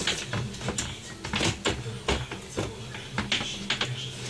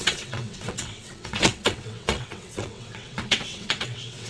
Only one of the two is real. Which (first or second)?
first